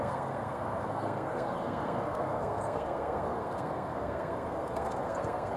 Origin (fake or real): fake